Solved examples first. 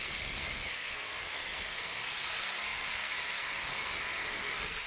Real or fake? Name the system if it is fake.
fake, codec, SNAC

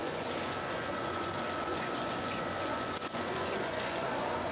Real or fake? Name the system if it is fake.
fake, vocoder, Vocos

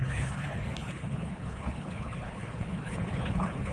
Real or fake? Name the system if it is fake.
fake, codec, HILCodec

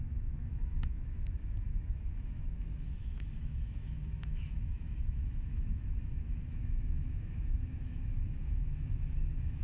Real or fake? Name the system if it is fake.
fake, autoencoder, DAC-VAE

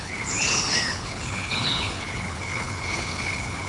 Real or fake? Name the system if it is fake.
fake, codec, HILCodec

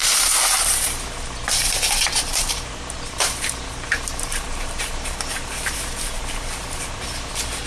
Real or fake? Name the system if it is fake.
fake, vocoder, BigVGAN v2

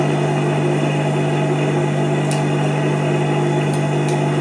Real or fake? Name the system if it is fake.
real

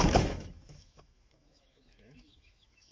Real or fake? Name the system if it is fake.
fake, autoencoder, DAC-VAE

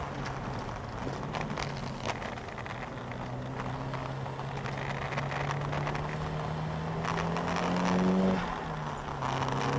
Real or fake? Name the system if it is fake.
real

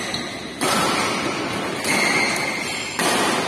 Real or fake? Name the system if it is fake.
real